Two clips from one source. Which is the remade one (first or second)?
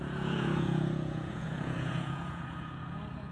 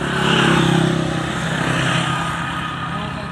first